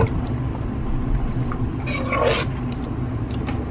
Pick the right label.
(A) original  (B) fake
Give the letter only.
A